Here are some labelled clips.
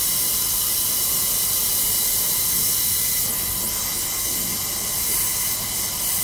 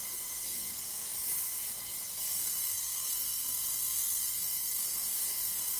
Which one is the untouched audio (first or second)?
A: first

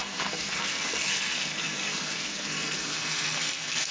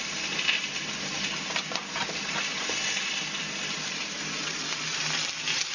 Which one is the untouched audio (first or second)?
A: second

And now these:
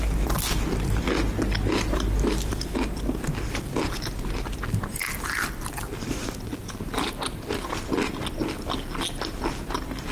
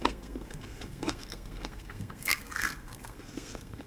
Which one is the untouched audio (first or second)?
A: first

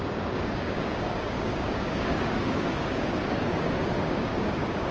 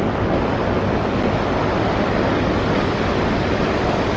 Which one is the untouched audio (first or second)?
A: second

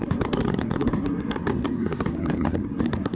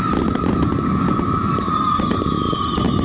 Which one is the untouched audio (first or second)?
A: second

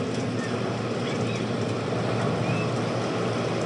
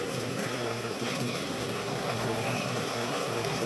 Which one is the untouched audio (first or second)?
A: first